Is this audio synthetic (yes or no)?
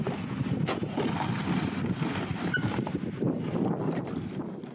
no